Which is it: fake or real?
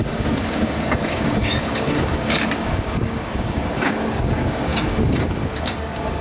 fake